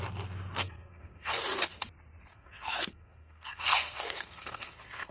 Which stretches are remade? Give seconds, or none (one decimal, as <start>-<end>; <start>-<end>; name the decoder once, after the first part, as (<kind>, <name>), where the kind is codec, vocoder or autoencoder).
0.6-1.4 (codec, SNAC); 2.3-5.1